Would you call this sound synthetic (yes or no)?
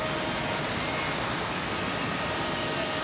no